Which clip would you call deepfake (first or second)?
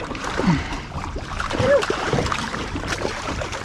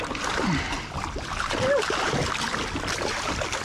first